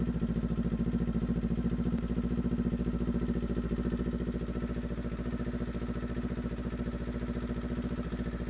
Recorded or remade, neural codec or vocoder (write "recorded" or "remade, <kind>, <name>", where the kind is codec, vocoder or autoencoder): recorded